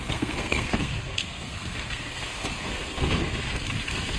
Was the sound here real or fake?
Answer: fake